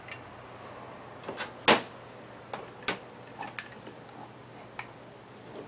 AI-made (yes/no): no